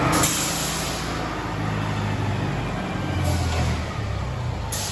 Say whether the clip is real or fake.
real